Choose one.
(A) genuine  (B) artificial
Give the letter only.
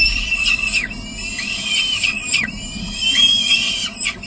B